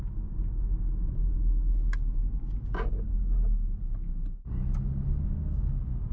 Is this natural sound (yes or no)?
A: yes